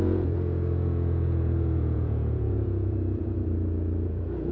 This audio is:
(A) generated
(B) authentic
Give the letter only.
A